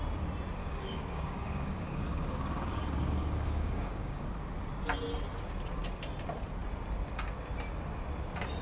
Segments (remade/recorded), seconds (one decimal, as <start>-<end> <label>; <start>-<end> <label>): 0.0-0.6 recorded; 0.6-4.3 remade; 4.3-8.6 recorded